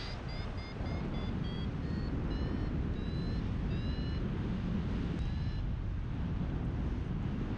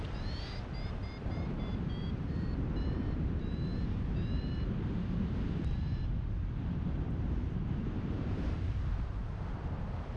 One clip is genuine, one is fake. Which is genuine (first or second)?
first